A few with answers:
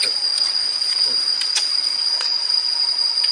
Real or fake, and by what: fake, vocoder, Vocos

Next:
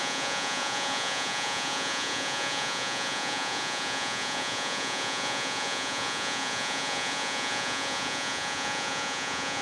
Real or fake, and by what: fake, vocoder, Vocos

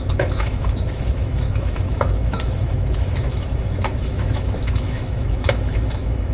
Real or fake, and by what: fake, autoencoder, DAC-VAE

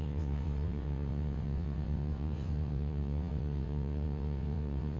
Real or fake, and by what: fake, vocoder, WaveNeXt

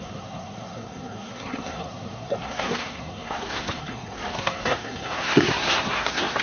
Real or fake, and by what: fake, codec, SNAC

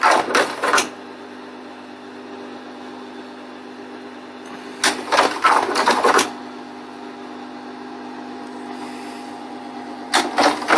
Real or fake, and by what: real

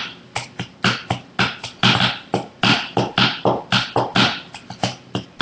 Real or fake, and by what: real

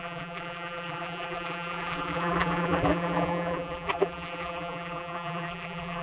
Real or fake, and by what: fake, vocoder, BigVGAN v2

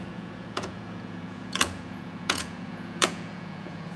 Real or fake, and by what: fake, vocoder, Vocos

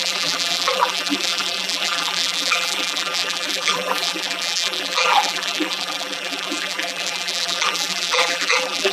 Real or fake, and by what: fake, vocoder, BigVGAN v2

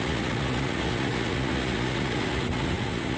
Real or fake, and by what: fake, vocoder, Vocos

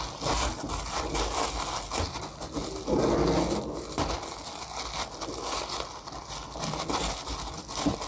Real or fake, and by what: real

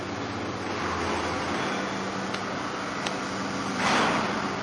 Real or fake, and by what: real